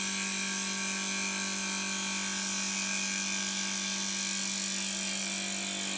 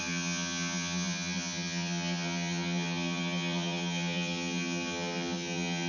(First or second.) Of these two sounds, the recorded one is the first